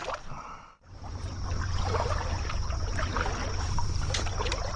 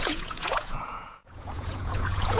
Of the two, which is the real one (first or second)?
first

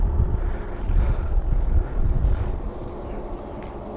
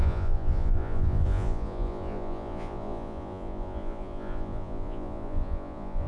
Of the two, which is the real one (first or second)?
first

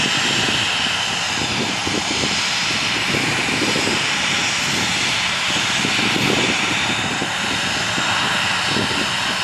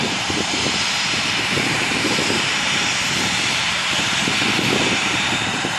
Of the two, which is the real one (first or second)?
first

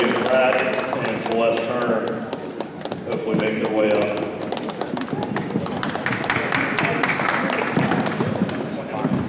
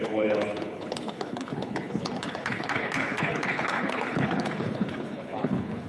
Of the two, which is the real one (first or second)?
first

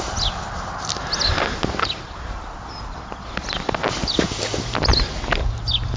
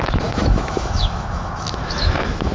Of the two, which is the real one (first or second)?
first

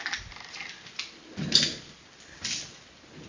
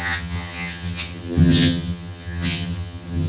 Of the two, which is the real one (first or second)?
first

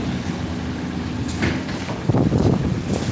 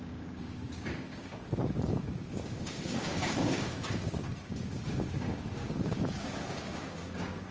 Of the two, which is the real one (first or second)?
first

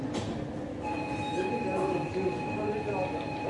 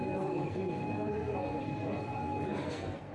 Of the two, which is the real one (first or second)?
first